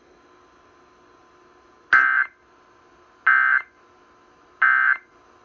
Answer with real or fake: real